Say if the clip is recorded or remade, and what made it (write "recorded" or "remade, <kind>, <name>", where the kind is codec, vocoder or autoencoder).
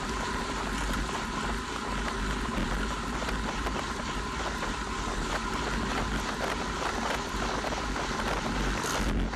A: recorded